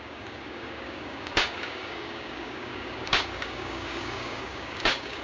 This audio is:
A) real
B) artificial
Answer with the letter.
B